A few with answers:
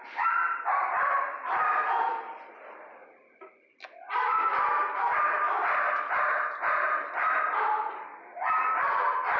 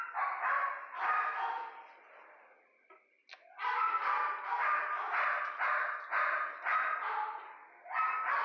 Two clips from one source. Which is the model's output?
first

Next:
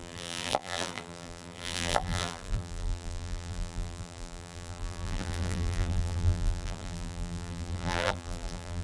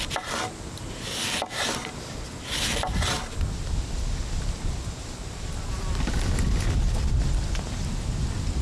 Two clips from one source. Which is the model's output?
first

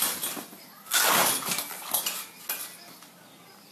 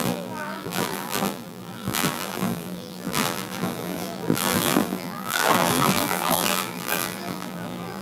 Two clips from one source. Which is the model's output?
second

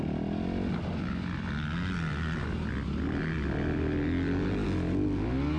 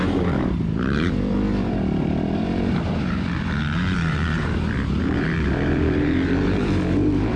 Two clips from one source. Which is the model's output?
second